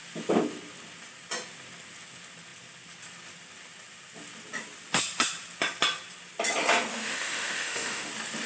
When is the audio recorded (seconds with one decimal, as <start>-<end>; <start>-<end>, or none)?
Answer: 0.0-6.9; 8.1-8.5